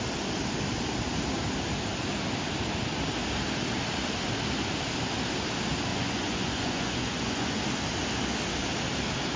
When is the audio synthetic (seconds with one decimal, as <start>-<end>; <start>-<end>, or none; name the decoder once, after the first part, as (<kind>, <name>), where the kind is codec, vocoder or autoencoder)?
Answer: 5.9-7.6 (vocoder, Vocos)